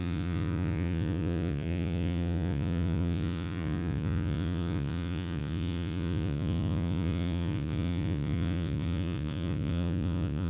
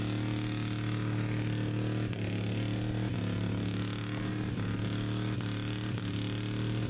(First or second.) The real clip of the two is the second